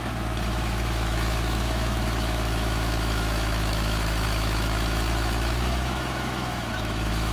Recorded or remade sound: remade